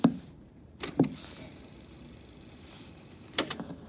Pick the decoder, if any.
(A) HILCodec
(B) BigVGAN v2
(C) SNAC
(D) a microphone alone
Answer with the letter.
B